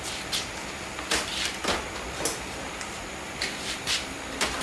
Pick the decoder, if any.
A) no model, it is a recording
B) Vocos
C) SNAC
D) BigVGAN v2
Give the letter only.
D